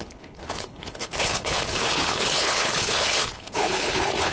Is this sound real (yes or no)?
no